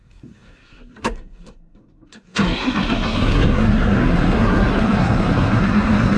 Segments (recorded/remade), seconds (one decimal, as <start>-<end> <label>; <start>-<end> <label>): 0.0-6.2 remade